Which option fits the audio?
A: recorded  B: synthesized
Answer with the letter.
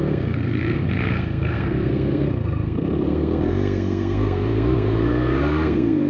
B